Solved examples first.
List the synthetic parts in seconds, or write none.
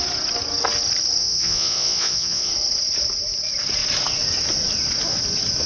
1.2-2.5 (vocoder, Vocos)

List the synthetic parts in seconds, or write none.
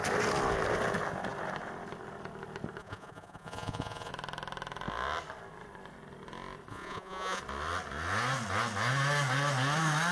2.8-4.1 (vocoder, Vocos); 6.7-7.4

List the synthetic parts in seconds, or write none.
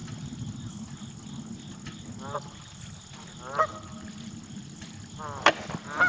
none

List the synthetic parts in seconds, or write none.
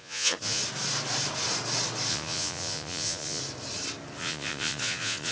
0.0-0.6 (vocoder, Vocos); 2.1-3.4; 4.2-5.3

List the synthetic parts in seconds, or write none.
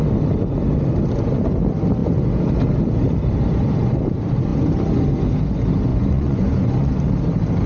5.9-7.1 (vocoder, Vocos)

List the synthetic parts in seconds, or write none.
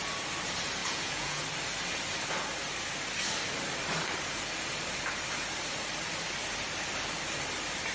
0.8-1.4 (vocoder, Vocos)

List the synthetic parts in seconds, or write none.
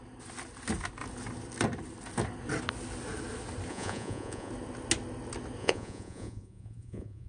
3.7-4.5 (vocoder, Vocos); 5.6-7.3